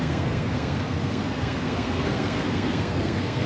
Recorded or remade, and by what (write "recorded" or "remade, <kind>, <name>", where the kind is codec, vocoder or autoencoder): remade, codec, SNAC